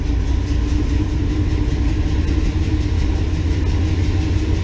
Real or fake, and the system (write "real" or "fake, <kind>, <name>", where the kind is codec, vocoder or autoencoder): real